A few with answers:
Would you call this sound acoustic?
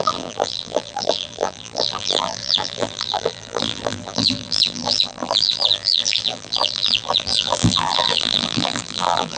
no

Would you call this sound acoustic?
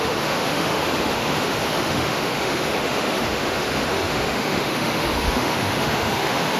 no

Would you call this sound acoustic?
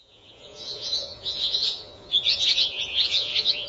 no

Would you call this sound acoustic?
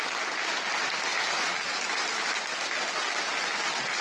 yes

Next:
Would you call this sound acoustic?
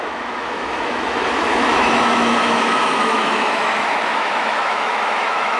no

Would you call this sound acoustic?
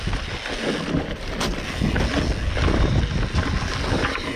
yes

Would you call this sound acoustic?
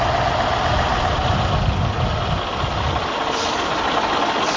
yes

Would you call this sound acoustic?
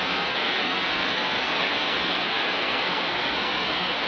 no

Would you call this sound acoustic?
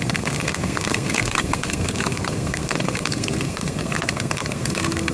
no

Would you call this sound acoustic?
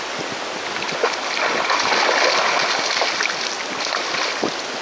yes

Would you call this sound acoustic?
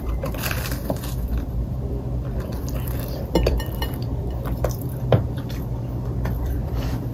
no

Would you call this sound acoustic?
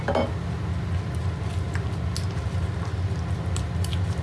yes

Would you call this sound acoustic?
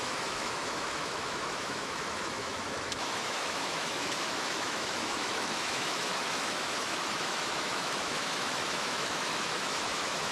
no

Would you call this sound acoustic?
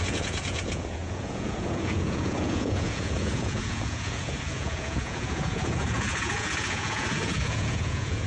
no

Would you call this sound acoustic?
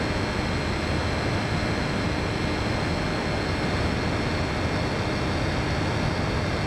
yes